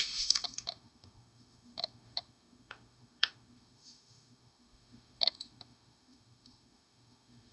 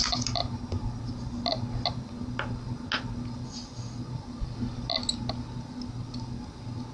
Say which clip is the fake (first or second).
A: first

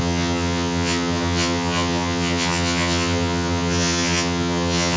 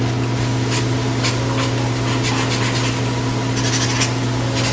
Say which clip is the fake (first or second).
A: first